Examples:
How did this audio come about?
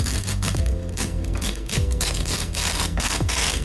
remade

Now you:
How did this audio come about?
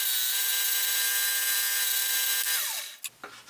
recorded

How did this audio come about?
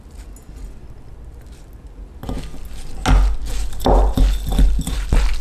recorded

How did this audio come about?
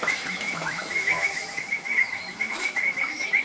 remade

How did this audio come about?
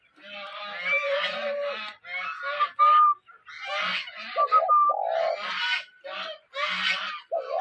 recorded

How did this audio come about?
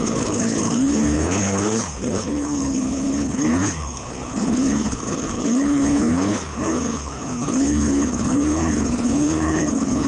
remade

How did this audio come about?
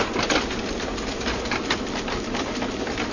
recorded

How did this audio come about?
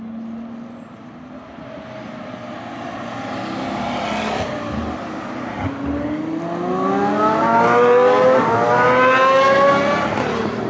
recorded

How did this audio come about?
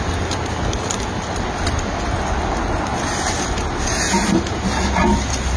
recorded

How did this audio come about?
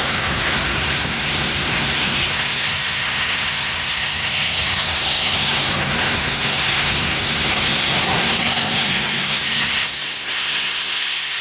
remade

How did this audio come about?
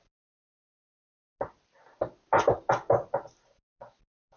recorded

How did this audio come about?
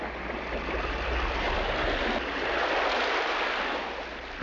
recorded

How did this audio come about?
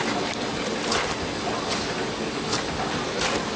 recorded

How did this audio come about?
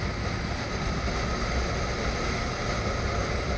recorded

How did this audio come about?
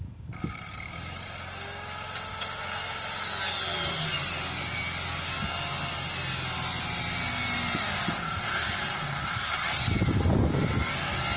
recorded